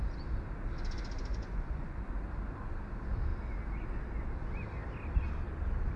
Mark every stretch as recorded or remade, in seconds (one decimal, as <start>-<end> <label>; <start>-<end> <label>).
0.0-1.3 recorded; 1.3-2.0 remade; 2.0-6.0 recorded